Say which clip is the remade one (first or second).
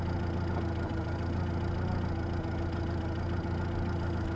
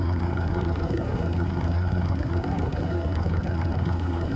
second